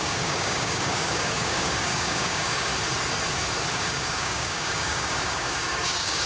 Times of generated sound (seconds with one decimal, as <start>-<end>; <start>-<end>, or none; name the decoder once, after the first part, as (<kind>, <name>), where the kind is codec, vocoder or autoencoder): 0.0-2.7 (codec, DAC); 3.7-6.3